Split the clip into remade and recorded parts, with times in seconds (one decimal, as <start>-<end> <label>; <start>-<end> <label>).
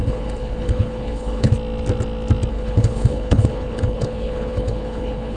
0.0-1.5 remade; 1.5-2.5 recorded; 2.5-5.4 remade